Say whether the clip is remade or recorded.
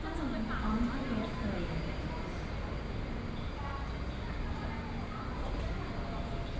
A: recorded